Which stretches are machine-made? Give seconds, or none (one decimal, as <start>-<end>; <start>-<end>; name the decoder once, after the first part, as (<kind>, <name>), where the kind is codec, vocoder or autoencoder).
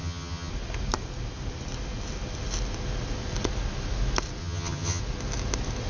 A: 0.0-0.5 (vocoder, HiFi-GAN); 4.4-5.0